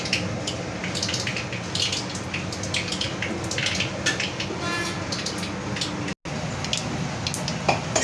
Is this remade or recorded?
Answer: recorded